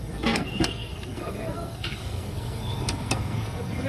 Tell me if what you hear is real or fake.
fake